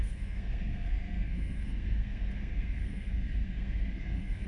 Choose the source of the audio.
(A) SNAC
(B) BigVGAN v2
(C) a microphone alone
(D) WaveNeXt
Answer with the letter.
A